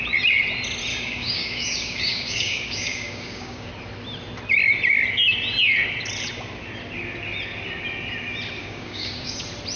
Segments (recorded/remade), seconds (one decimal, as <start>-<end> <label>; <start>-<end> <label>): 0.0-0.9 recorded; 0.9-3.7 remade; 3.7-8.6 recorded; 8.6-9.4 remade; 9.4-9.8 recorded